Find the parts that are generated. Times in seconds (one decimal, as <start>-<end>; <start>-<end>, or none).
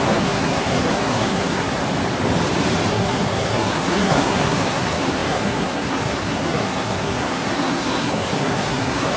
0.0-1.8; 2.9-9.2